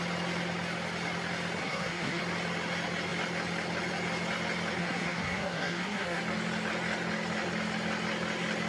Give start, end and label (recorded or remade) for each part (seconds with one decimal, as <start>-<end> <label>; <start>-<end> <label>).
0.0-1.6 recorded; 1.6-2.2 remade; 2.2-4.8 recorded; 4.8-6.2 remade; 6.2-8.7 recorded